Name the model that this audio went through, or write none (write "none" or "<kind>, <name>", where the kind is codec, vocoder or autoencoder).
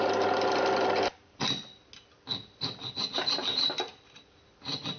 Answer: none